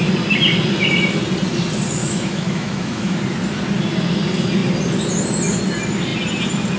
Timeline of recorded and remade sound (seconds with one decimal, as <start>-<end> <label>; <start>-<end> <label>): 0.0-2.0 recorded; 2.0-3.2 remade; 3.2-6.8 recorded

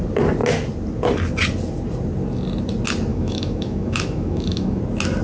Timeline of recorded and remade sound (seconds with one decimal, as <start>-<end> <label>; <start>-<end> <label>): 0.0-3.1 recorded; 3.1-4.8 remade; 4.8-5.2 recorded